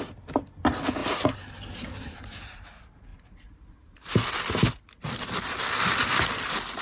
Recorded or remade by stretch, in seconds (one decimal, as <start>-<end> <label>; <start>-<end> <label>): 0.0-1.0 recorded; 1.0-1.5 remade; 1.5-3.1 recorded; 3.1-6.8 remade